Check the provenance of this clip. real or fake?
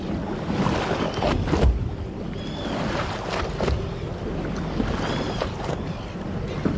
real